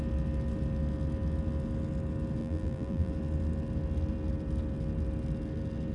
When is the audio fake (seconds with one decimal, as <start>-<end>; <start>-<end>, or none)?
2.4-3.1